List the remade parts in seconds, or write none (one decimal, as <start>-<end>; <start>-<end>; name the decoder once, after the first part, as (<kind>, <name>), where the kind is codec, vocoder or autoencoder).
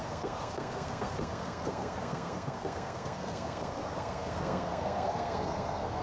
0.0-6.0 (codec, SNAC)